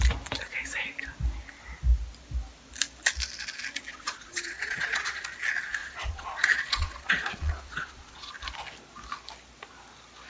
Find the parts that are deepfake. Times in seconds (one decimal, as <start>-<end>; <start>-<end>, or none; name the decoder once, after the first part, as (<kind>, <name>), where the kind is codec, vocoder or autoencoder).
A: 3.9-5.2 (vocoder, Vocos); 5.8-8.3